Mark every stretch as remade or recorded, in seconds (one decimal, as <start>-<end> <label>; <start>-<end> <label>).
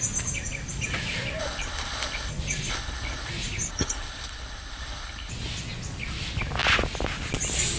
0.0-1.4 recorded; 1.4-2.3 remade; 2.3-2.7 recorded; 2.7-3.3 remade; 3.3-3.7 recorded; 3.7-5.3 remade; 5.3-7.8 recorded